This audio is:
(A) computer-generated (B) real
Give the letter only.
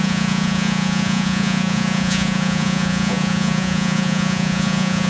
A